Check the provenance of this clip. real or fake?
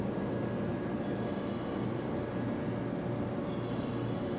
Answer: real